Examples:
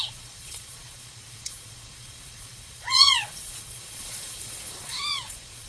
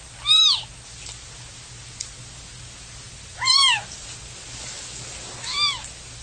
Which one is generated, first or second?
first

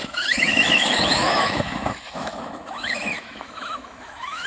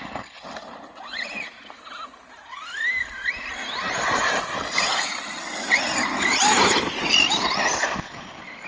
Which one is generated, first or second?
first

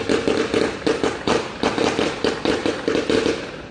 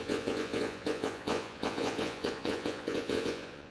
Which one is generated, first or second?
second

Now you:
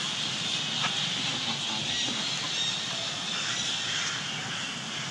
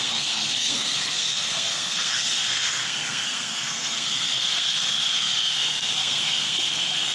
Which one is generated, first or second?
second